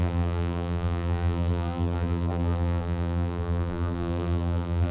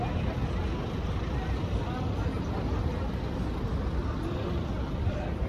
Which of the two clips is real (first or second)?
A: second